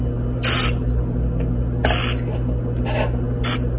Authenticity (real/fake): real